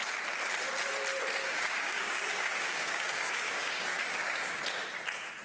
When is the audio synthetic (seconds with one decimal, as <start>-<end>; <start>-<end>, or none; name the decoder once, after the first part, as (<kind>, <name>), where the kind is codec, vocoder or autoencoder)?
1.4-4.6 (codec, DAC)